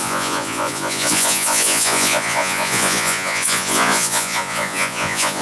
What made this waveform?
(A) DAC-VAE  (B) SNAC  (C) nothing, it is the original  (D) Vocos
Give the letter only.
D